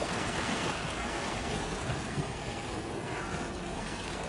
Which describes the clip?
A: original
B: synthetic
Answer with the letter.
B